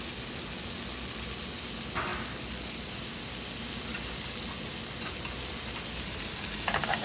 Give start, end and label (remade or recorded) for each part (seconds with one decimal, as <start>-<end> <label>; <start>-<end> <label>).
0.0-7.0 recorded